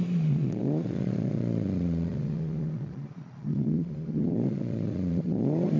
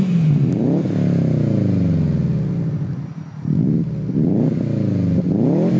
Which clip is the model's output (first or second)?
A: first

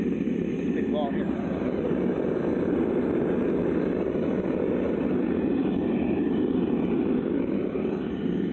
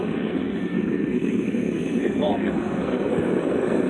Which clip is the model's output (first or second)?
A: second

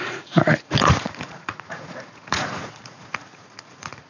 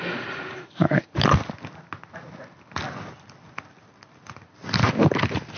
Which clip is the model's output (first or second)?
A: first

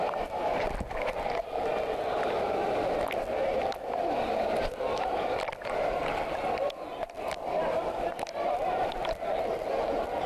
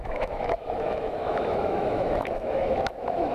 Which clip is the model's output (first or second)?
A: second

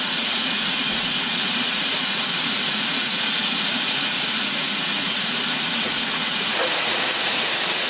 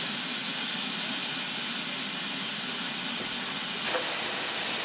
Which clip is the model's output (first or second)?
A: first